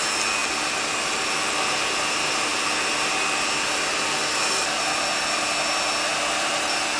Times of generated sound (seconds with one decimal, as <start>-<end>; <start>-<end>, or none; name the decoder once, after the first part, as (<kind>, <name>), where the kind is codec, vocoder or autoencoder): none